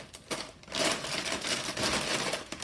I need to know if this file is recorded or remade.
recorded